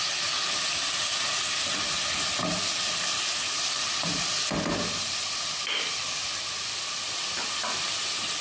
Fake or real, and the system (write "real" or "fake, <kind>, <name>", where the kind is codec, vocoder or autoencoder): real